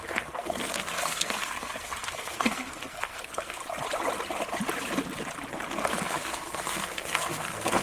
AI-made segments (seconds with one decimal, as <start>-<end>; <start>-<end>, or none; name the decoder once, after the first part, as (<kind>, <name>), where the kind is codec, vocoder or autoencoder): 0.0-3.6 (codec, SNAC); 5.5-7.8